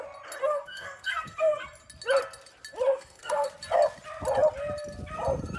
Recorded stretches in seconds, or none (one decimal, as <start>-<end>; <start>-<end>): 0.0-0.4; 1.6-2.9; 3.5-5.6